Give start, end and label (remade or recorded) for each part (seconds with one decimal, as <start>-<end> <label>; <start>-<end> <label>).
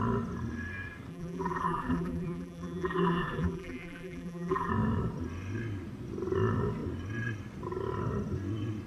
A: 0.0-1.1 recorded; 1.1-4.7 remade; 4.7-8.9 recorded